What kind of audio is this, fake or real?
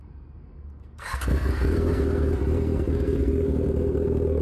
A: fake